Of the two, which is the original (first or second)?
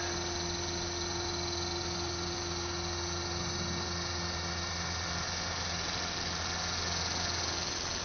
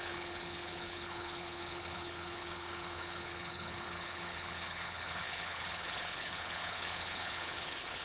first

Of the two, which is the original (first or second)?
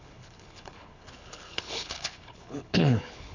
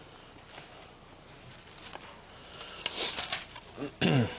second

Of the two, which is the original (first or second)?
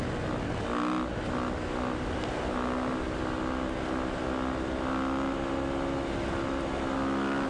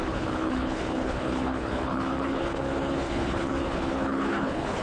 first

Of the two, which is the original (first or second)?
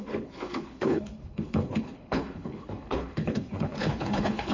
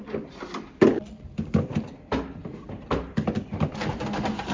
second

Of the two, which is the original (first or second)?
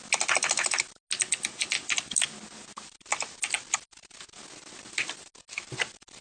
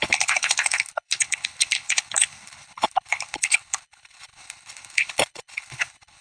first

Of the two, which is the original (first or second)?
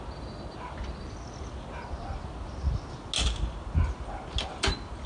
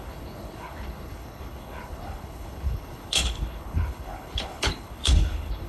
first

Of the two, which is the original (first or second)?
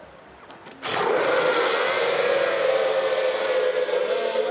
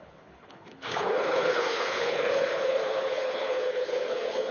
first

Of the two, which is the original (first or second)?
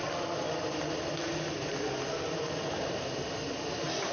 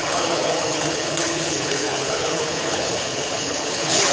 first